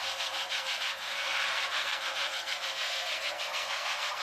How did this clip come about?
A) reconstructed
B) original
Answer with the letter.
A